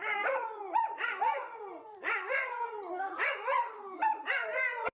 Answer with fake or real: fake